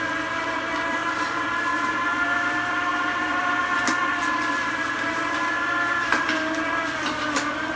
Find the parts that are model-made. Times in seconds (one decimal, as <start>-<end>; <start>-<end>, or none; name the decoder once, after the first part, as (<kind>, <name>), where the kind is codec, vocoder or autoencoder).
0.0-7.8 (vocoder, BigVGAN v2)